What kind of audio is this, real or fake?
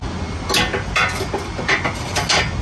real